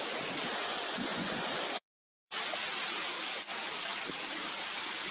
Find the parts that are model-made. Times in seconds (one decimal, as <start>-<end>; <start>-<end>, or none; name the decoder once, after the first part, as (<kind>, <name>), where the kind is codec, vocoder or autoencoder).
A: 0.7-2.4 (vocoder, Vocos)